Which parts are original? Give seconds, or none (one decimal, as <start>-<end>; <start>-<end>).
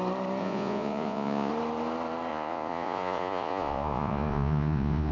0.0-0.4; 1.5-2.3